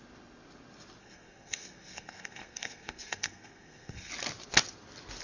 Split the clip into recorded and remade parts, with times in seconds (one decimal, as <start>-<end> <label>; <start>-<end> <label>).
0.0-1.0 recorded; 1.0-4.1 remade; 4.1-5.2 recorded